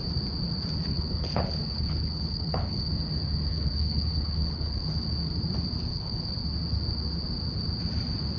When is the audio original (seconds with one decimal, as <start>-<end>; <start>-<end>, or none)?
0.0-0.9; 2.9-3.5; 4.9-5.9; 6.4-8.4